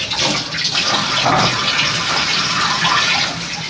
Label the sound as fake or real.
real